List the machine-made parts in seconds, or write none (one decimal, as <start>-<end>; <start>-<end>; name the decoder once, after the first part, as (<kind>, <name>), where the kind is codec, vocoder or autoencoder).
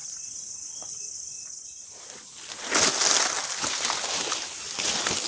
none